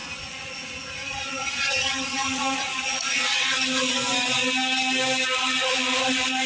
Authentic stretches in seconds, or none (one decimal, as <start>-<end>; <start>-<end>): 3.9-5.4; 6.1-6.5